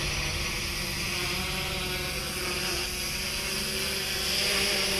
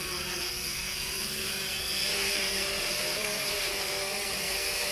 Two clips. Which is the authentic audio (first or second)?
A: first